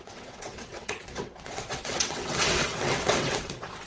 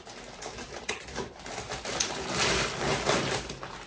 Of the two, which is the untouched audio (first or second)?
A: second